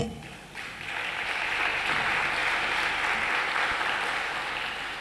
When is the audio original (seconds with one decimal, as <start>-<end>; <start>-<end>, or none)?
0.0-5.0